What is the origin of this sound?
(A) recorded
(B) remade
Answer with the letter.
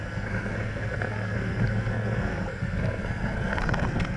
B